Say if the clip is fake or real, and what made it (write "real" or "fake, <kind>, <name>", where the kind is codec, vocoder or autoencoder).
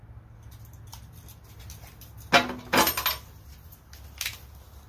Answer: real